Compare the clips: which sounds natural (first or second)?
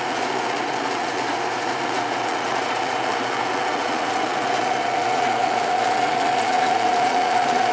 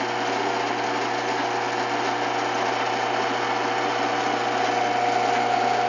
second